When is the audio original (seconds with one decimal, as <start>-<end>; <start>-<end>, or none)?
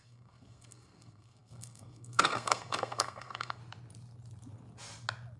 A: 3.6-5.4